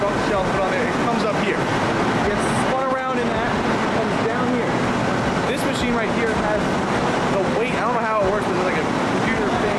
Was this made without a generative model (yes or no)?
yes